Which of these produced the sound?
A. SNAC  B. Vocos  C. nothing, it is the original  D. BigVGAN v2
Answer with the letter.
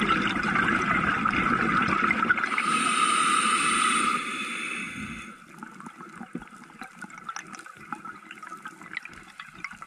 C